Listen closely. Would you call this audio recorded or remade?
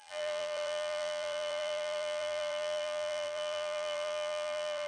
remade